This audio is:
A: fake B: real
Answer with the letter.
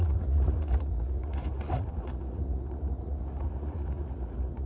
A